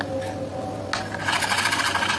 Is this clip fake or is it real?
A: real